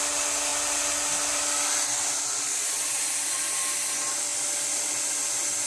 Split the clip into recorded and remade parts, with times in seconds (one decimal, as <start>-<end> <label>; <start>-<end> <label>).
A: 0.0-5.7 recorded